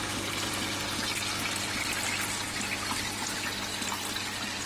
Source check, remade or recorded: recorded